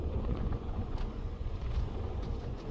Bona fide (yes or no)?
no